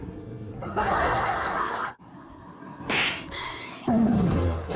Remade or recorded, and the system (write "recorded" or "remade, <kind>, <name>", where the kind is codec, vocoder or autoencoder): remade, codec, SNAC